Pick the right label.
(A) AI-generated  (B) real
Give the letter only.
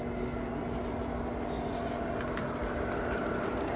B